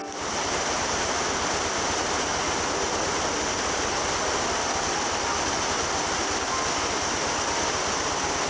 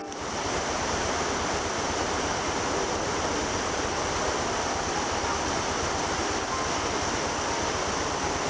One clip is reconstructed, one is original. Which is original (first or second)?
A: first